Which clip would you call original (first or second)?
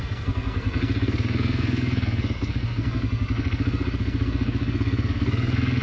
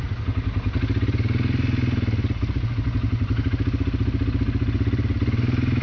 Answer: second